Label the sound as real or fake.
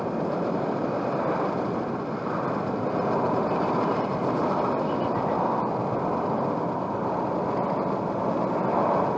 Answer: real